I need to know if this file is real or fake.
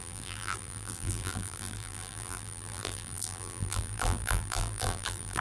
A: fake